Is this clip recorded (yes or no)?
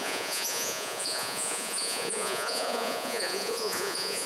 no